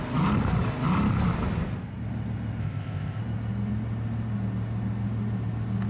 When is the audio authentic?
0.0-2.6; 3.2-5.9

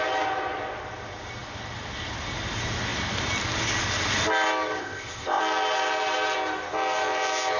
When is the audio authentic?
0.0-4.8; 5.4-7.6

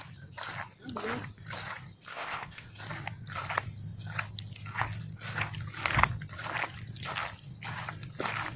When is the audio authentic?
0.0-2.1; 2.7-8.6

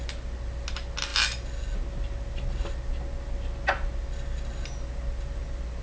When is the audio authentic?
0.0-5.8

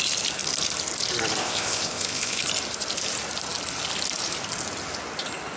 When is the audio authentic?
0.0-1.4; 2.4-5.6